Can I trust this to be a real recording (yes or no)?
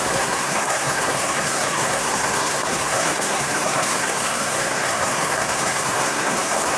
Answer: no